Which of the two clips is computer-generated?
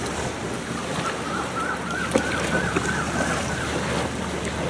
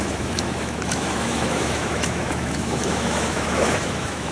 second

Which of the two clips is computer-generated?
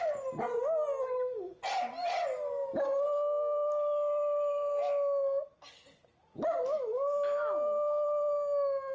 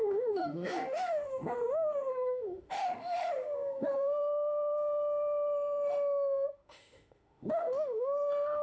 second